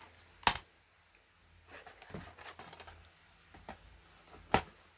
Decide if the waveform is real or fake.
real